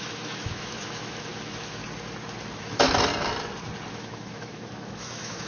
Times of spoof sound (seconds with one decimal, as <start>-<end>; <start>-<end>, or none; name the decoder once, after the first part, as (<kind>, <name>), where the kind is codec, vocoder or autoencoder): 0.0-1.8 (autoencoder, DAC-VAE); 2.5-3.1; 3.9-5.5